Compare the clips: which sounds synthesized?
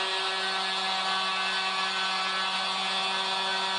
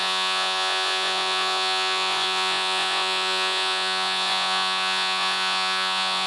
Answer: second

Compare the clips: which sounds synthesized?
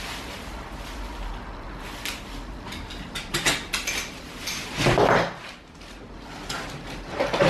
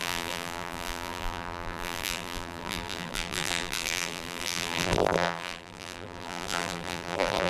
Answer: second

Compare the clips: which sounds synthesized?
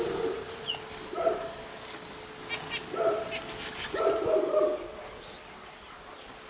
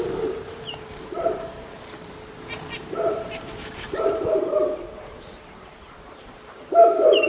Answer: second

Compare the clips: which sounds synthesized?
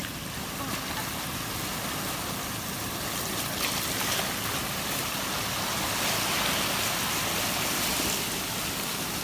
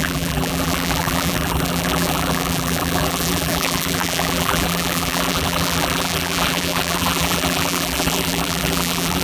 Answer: second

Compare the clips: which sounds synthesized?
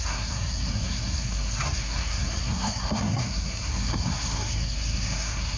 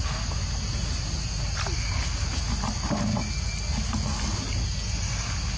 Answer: first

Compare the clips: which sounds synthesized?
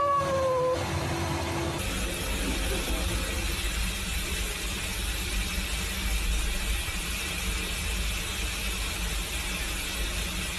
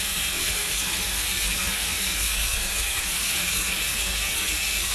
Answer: second